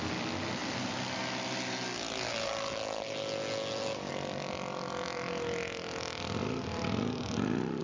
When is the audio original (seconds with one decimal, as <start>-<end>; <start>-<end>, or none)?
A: 0.0-7.8